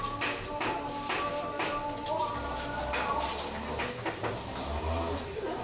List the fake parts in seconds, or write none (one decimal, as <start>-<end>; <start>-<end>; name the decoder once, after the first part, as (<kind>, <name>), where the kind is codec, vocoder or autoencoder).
none